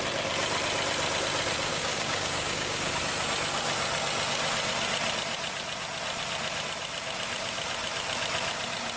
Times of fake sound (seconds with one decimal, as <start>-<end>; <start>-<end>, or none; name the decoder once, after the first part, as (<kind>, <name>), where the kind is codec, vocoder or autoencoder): 1.7-2.9 (codec, DAC)